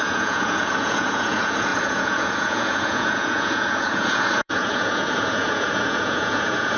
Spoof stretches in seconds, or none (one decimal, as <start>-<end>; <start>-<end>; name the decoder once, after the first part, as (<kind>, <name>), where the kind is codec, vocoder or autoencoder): 0.0-6.8 (vocoder, Vocos)

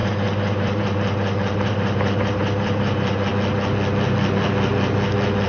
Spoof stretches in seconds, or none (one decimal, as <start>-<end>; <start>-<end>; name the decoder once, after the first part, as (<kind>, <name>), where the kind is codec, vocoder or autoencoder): 0.0-3.3 (vocoder, BigVGAN v2)

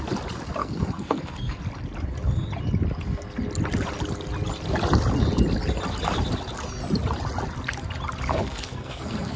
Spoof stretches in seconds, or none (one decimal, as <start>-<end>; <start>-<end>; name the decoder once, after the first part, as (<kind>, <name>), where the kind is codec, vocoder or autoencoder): 0.6-1.6 (codec, SNAC); 8.3-9.4